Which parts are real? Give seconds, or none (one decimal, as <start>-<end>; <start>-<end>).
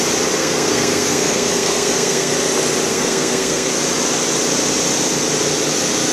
0.0-0.4; 2.3-2.9; 3.7-6.1